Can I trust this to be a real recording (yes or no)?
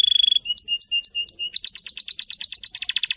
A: yes